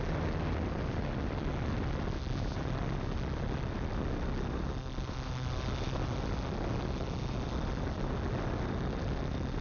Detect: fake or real real